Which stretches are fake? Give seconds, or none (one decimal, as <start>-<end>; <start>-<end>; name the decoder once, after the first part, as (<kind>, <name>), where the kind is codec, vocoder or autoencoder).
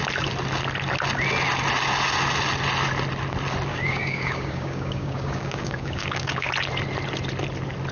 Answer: 3.7-6.5 (codec, DAC)